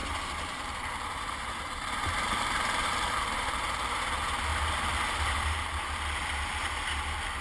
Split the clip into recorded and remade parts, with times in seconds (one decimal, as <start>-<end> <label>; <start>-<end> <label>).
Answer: 0.0-4.0 remade; 4.0-4.5 recorded; 4.5-5.7 remade; 5.7-7.4 recorded